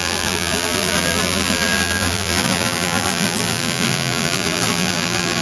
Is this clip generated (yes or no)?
yes